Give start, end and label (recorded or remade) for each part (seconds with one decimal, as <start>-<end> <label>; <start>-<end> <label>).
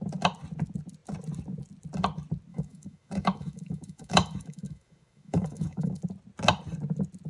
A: 0.0-2.5 recorded; 2.5-6.0 remade; 6.0-7.3 recorded